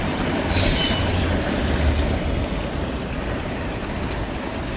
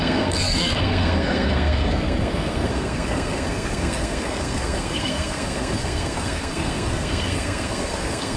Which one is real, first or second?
first